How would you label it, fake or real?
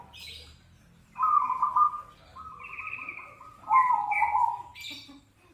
real